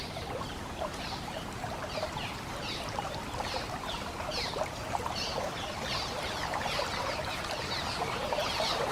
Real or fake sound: fake